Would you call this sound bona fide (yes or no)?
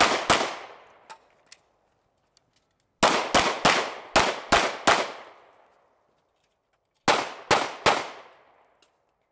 yes